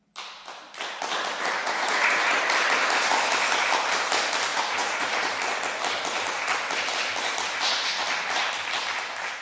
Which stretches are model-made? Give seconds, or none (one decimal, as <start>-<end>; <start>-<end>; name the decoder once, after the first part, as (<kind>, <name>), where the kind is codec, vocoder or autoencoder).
1.6-2.4 (vocoder, Vocos); 4.5-5.3